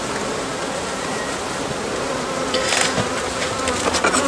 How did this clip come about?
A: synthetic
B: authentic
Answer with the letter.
B